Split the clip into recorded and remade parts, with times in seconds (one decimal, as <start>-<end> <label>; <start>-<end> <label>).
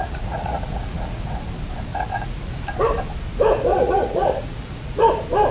0.0-1.2 remade; 1.2-1.9 recorded; 1.9-2.5 remade; 2.5-3.7 recorded; 3.7-5.0 remade; 5.0-5.5 recorded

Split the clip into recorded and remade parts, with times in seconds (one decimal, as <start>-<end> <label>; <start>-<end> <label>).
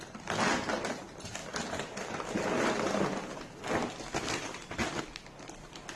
0.0-6.0 recorded